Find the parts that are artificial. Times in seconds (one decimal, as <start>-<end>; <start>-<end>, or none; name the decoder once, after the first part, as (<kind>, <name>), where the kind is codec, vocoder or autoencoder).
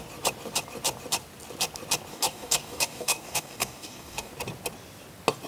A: 2.1-4.3 (codec, DAC)